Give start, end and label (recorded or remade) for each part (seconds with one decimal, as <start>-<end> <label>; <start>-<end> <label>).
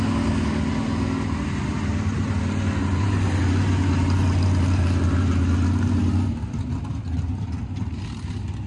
0.0-2.8 recorded; 2.8-3.4 remade; 3.4-8.7 recorded